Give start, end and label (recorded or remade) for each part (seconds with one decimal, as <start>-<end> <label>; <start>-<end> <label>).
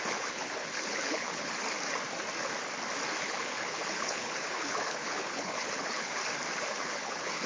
0.0-1.5 remade; 1.5-3.2 recorded; 3.2-6.2 remade; 6.2-6.7 recorded; 6.7-7.5 remade